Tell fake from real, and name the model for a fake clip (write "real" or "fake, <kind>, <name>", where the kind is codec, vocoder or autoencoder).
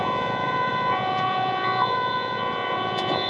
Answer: fake, vocoder, Vocos